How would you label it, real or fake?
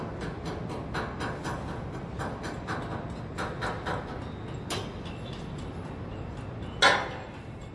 real